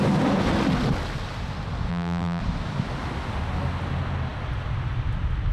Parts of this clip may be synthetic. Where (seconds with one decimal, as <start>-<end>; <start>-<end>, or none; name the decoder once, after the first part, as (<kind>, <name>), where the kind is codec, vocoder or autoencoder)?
1.9-2.4 (vocoder, BigVGAN v2)